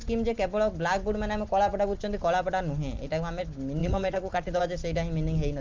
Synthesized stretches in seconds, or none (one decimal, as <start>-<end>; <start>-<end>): 3.8-4.6

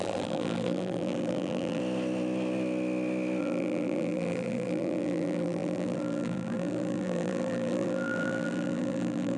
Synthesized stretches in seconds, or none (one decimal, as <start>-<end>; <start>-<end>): 0.0-1.8; 3.4-9.4

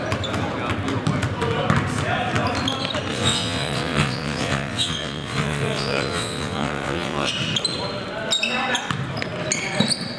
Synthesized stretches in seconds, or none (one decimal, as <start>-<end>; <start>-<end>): 3.1-7.3

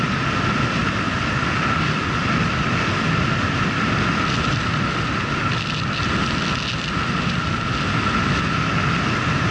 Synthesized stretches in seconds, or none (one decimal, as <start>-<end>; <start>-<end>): none

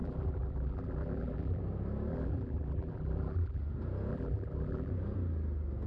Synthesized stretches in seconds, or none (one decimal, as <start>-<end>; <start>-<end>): 0.0-1.6; 2.1-3.6; 4.1-4.9

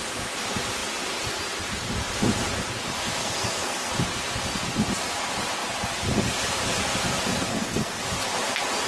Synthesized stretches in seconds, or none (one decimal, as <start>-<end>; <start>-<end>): 3.2-3.9; 7.5-8.0

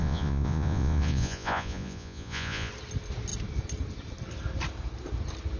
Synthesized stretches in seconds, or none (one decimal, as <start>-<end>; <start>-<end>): 0.0-2.7

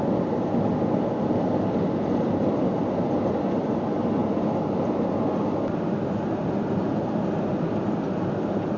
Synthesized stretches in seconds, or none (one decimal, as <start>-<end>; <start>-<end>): none